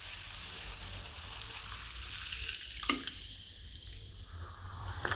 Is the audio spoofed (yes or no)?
yes